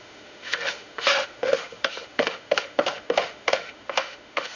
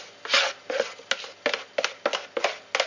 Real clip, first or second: second